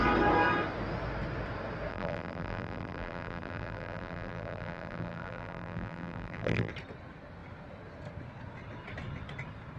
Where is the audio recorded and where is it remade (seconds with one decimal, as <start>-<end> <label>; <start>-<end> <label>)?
0.0-1.9 recorded; 1.9-6.7 remade; 6.7-9.8 recorded